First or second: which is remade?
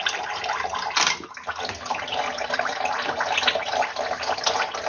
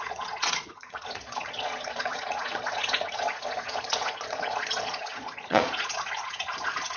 second